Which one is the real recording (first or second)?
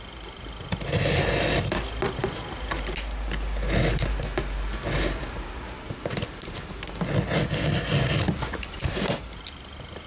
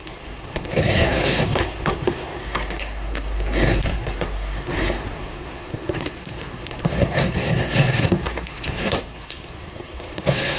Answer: first